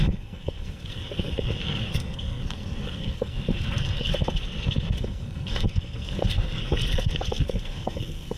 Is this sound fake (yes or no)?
yes